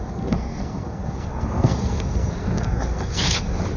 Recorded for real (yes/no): no